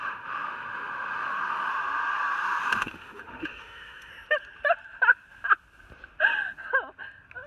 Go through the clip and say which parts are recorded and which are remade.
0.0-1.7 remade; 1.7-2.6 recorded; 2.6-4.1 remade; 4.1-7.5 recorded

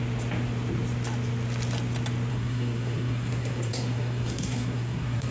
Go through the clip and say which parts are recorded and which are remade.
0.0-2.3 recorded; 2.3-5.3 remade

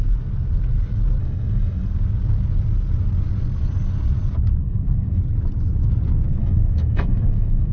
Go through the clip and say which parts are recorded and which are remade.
0.0-1.2 recorded; 1.2-1.9 remade; 1.9-4.6 recorded; 4.6-5.2 remade; 5.2-6.4 recorded; 6.4-7.7 remade

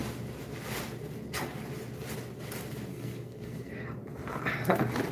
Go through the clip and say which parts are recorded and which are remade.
0.0-2.9 recorded; 2.9-3.7 remade; 3.7-5.1 recorded